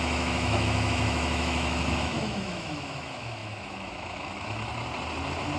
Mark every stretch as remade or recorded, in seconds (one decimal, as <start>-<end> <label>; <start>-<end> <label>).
0.0-4.7 remade; 4.7-5.6 recorded